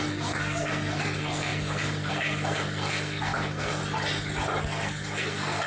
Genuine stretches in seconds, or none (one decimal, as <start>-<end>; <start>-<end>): 3.8-4.6